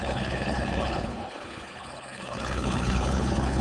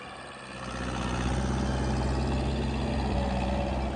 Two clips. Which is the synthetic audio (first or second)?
first